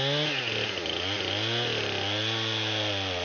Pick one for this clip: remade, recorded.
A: recorded